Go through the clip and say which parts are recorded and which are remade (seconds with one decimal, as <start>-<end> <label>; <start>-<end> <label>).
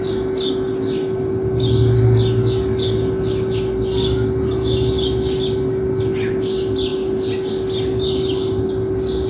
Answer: 0.0-9.3 recorded